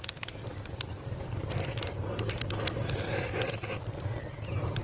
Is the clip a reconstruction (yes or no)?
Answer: yes